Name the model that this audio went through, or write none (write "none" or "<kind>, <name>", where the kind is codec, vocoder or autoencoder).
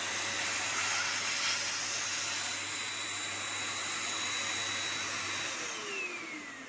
none